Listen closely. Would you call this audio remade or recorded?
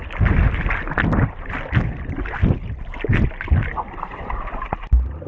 recorded